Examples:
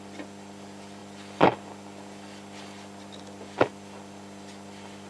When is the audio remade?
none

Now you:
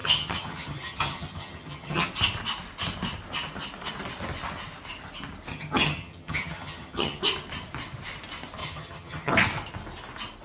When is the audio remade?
0.0-2.1 (vocoder, HiFi-GAN); 5.5-7.2; 8.6-9.3